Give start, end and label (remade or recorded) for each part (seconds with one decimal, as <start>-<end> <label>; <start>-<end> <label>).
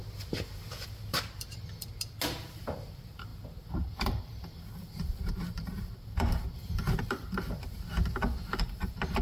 0.0-1.9 remade; 1.9-2.6 recorded; 2.6-9.2 remade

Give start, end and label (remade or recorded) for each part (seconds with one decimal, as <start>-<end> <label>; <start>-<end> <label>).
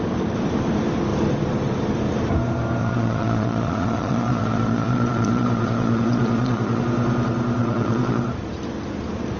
0.0-2.8 recorded; 2.8-6.8 remade; 6.8-7.6 recorded; 7.6-8.2 remade; 8.2-9.4 recorded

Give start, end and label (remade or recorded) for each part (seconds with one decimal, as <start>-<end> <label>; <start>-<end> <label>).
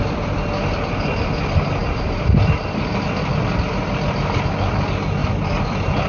0.0-1.8 recorded; 1.8-3.3 remade; 3.3-5.2 recorded; 5.2-6.1 remade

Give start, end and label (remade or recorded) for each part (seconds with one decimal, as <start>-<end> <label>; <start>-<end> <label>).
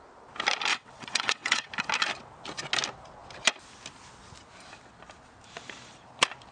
0.0-0.7 recorded; 0.7-1.7 remade; 1.7-6.5 recorded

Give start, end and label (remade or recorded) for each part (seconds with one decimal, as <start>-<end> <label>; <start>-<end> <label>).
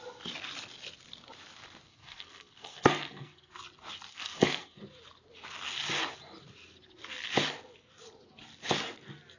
0.0-1.9 recorded; 1.9-3.5 remade; 3.5-4.1 recorded; 4.1-4.8 remade; 4.8-9.4 recorded